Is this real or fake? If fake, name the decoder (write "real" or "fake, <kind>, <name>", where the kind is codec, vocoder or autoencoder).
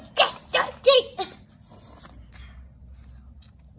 real